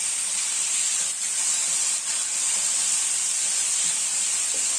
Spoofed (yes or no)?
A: no